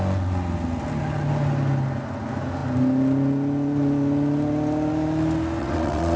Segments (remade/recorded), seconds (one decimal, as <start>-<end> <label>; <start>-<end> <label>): 0.0-5.6 recorded; 5.6-6.2 remade